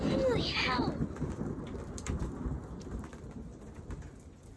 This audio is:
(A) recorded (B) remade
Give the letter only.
A